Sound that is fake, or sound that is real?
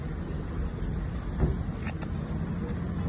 real